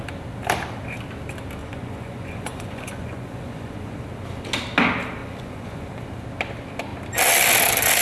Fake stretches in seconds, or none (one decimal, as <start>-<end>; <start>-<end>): 1.6-4.0; 5.2-5.9